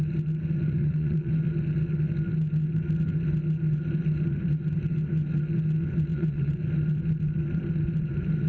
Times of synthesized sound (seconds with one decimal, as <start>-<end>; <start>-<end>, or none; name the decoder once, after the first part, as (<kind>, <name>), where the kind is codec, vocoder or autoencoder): 0.8-1.3 (vocoder, WaveNeXt); 6.1-6.6